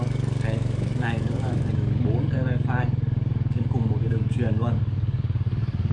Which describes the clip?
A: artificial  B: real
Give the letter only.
A